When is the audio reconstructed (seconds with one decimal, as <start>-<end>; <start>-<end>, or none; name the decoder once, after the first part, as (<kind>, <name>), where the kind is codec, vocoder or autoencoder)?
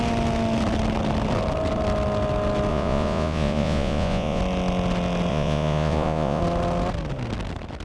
2.7-4.4 (vocoder, Vocos); 5.3-6.4